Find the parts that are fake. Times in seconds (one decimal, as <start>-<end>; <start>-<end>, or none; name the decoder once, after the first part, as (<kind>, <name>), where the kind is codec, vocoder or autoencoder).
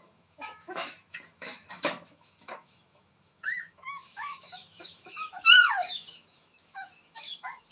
0.0-7.7 (autoencoder, DAC-VAE)